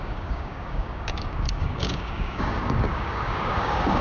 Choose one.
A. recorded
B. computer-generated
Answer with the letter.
B